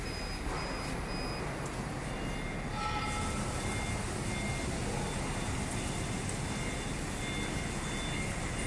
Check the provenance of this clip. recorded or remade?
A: recorded